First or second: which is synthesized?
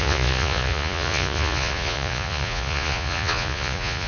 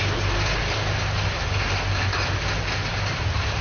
first